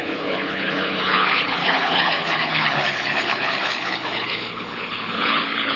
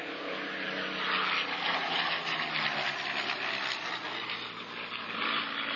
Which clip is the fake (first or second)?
first